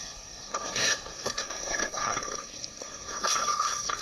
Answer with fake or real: fake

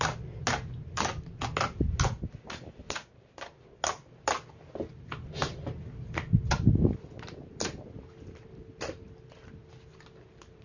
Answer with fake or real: real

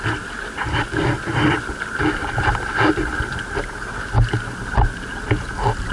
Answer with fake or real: real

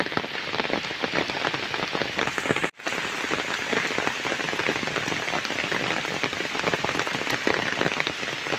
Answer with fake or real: real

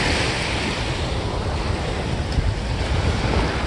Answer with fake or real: real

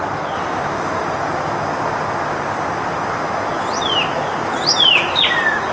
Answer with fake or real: real